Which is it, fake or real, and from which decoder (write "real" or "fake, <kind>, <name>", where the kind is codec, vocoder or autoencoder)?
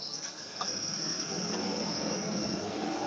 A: fake, codec, SNAC